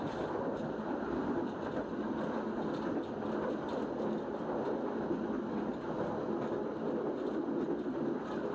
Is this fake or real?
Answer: real